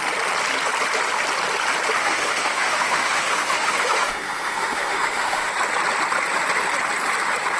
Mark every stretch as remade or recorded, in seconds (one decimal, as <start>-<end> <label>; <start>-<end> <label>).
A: 0.0-2.0 recorded; 2.0-5.5 remade; 5.5-7.6 recorded